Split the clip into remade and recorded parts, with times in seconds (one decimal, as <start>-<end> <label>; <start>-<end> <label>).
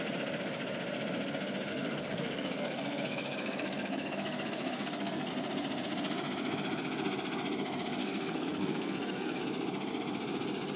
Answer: 0.0-1.7 recorded; 1.7-5.3 remade; 5.3-8.0 recorded; 8.0-9.4 remade; 9.4-10.8 recorded